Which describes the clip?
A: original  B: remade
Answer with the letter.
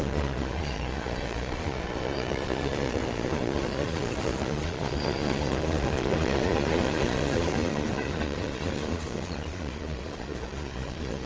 B